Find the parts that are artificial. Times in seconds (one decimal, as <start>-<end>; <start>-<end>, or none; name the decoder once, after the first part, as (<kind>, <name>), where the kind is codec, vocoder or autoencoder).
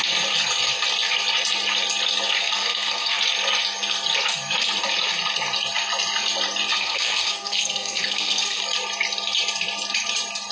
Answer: 2.4-3.2 (codec, SNAC); 6.7-8.6